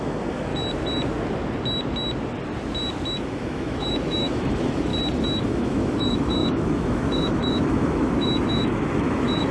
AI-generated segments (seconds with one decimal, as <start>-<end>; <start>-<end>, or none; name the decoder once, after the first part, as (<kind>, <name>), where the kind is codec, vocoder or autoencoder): 0.0-0.5 (autoencoder, DAC-VAE); 3.1-4.9; 5.4-9.5